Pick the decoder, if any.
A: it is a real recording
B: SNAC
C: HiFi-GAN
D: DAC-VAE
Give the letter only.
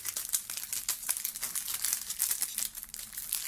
A